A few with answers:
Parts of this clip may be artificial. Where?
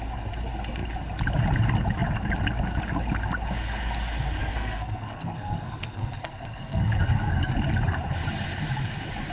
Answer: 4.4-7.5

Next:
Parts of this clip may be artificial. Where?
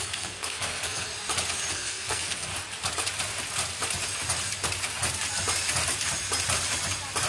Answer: 0.0-1.1; 1.7-2.5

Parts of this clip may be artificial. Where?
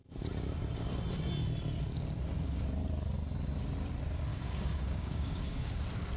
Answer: 4.3-5.7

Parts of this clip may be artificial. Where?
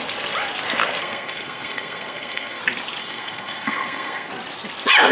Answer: 1.0-2.6; 3.0-4.3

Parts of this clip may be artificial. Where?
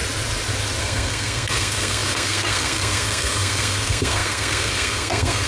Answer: 0.8-5.5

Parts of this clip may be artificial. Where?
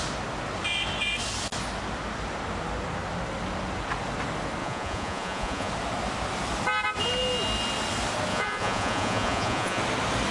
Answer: 4.6-5.7; 8.3-9.8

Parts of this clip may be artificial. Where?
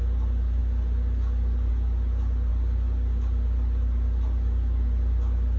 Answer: none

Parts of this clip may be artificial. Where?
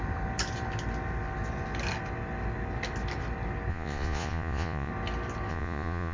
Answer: 3.7-4.9; 5.5-6.1